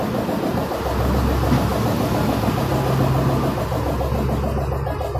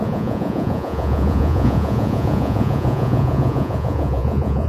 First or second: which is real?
first